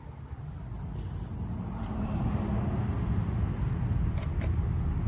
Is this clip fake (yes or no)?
no